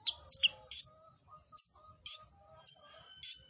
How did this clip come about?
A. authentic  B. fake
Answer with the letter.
A